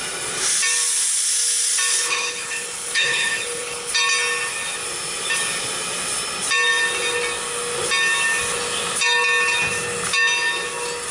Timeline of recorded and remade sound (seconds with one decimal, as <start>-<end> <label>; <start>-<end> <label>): 0.0-1.9 recorded; 1.9-3.9 remade; 3.9-11.1 recorded